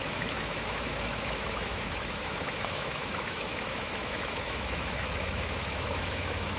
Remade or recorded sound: remade